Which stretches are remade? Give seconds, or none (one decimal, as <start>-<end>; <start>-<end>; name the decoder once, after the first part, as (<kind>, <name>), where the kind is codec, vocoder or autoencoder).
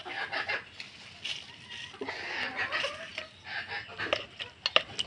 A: none